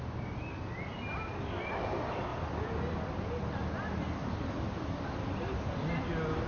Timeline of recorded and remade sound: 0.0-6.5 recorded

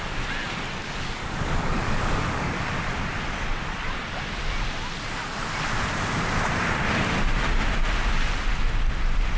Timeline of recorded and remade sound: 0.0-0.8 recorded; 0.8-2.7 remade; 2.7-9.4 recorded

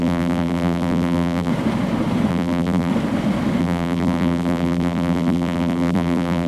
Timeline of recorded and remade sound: 0.0-1.5 remade; 1.5-2.3 recorded; 2.3-2.9 remade; 2.9-3.6 recorded; 3.6-6.5 remade

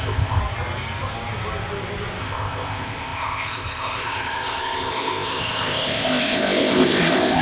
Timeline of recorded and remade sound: 0.0-0.4 remade; 0.4-2.2 recorded; 2.2-7.4 remade